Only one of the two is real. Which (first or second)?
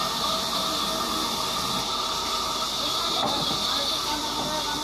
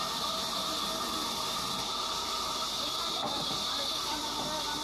first